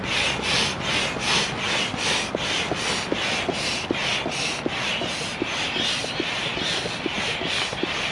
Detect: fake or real real